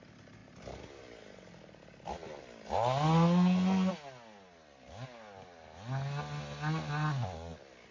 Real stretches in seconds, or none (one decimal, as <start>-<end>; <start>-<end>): 0.0-7.9